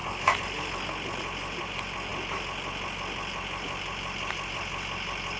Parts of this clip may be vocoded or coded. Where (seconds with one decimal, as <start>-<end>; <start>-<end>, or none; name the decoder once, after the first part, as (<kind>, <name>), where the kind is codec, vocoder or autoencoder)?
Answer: none